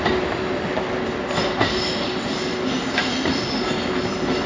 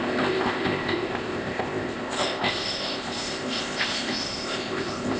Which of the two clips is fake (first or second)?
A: second